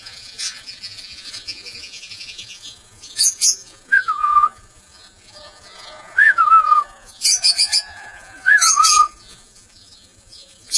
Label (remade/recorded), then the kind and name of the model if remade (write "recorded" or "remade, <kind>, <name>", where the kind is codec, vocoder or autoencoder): remade, vocoder, Vocos